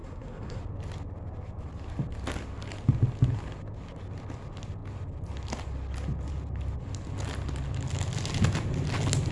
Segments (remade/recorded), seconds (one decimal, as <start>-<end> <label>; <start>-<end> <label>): 0.0-0.6 remade; 0.6-9.3 recorded